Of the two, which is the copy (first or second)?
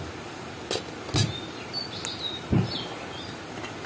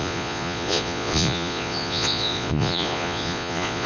second